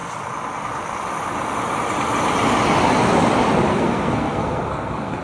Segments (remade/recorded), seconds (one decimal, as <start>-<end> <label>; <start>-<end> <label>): 0.0-3.7 recorded; 3.7-5.2 remade